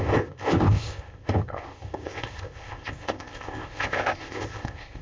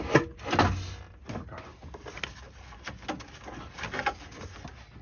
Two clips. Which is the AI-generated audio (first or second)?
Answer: first